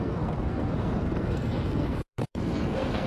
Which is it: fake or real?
fake